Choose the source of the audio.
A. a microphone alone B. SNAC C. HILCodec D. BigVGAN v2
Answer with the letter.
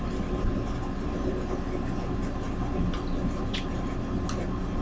A